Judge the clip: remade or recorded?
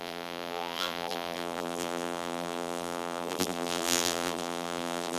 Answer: remade